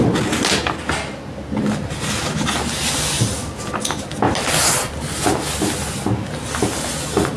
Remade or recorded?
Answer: recorded